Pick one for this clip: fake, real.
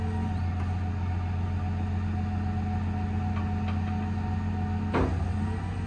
real